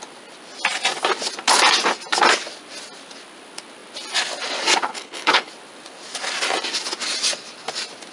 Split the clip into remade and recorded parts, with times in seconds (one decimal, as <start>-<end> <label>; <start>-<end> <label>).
0.0-4.9 recorded; 4.9-5.5 remade; 5.5-8.1 recorded